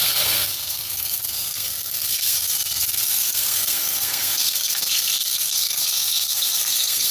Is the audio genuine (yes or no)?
no